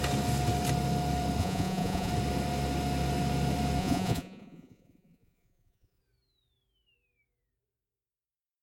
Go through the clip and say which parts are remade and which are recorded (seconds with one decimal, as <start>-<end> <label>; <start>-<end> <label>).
0.0-1.4 recorded; 1.4-2.1 remade; 2.1-3.8 recorded; 3.8-6.0 remade; 6.0-8.6 recorded